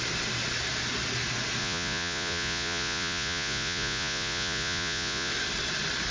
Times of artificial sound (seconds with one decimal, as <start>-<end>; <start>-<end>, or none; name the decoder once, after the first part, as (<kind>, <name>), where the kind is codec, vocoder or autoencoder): 1.6-5.3 (vocoder, Vocos)